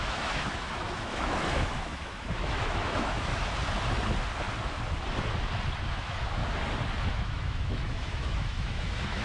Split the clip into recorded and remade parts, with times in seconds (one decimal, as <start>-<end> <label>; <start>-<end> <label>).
0.0-3.3 remade; 3.3-5.9 recorded; 5.9-6.4 remade; 6.4-7.1 recorded; 7.1-9.2 remade